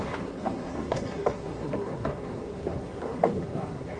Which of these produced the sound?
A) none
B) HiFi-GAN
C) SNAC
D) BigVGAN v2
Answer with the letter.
C